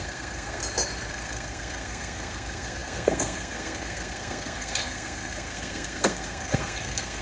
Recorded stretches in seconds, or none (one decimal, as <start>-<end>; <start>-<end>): 0.6-1.1